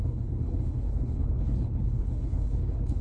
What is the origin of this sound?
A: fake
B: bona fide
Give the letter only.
A